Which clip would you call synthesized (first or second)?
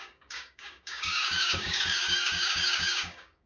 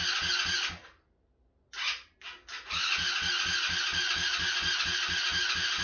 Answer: first